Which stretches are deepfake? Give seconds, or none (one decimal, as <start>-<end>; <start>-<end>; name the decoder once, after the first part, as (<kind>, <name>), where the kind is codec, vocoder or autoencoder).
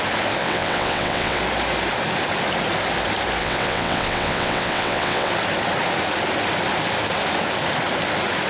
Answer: 0.4-1.4 (vocoder, WaveNeXt); 3.4-5.3